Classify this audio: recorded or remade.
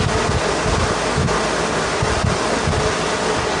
recorded